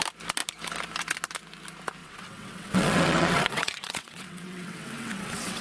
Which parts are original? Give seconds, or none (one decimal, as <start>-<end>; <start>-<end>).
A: 0.0-2.0